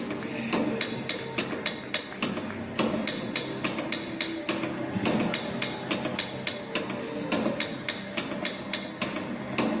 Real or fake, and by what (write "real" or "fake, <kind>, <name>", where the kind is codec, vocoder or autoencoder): real